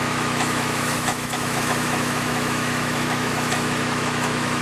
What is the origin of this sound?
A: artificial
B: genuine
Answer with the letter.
A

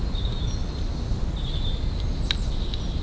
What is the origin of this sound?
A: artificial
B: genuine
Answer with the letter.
B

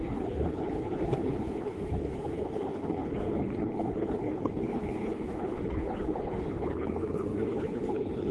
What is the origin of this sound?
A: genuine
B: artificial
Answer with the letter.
B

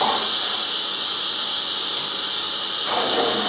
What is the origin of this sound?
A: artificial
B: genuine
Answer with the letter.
A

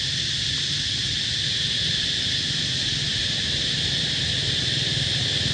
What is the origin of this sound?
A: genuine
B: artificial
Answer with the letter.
A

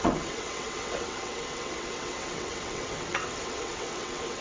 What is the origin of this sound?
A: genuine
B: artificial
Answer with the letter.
B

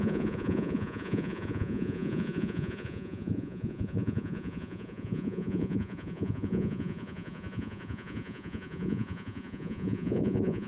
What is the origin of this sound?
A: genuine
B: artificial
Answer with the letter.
B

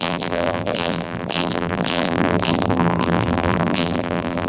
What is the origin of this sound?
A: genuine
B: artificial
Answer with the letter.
B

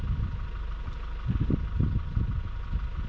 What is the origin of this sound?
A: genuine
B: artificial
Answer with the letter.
A